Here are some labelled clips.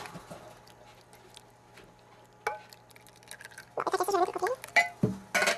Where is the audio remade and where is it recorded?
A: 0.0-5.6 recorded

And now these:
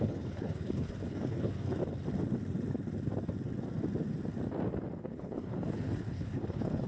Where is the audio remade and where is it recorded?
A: 0.0-1.8 remade; 1.8-5.0 recorded; 5.0-6.9 remade

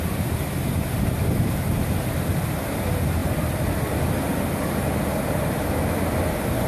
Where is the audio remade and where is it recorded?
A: 0.0-6.7 recorded

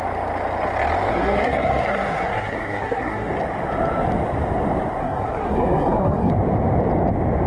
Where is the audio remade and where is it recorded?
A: 0.0-1.1 recorded; 1.1-3.3 remade; 3.3-5.0 recorded; 5.0-6.3 remade; 6.3-7.5 recorded

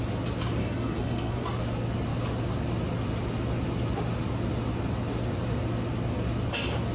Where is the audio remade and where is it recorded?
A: 0.0-0.6 recorded; 0.6-1.4 remade; 1.4-6.9 recorded

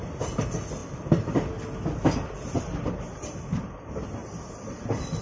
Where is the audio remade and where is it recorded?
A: 0.0-5.2 recorded